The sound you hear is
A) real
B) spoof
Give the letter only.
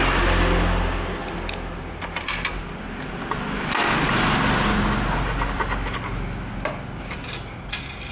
A